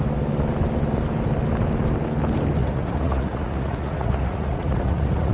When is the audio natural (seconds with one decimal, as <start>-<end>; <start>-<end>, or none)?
0.0-2.6